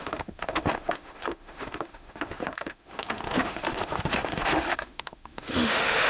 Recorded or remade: remade